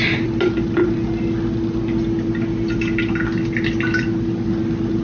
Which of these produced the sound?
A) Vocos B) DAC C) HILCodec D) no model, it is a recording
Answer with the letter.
D